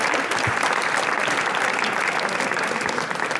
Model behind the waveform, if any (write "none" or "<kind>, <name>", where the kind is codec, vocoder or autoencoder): none